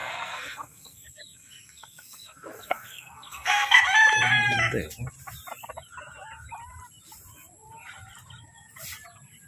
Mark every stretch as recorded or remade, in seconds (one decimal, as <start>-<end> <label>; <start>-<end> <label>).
0.0-3.8 remade; 3.8-9.5 recorded